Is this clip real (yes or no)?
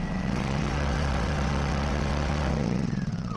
no